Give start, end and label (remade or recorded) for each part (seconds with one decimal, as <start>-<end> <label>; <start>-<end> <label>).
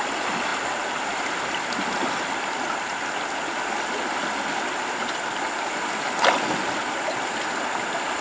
0.0-8.2 recorded